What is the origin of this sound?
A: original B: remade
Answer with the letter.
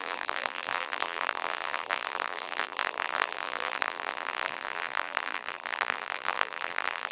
B